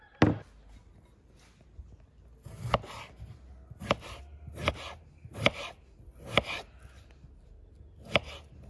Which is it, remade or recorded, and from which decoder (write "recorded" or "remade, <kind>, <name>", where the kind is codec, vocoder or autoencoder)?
recorded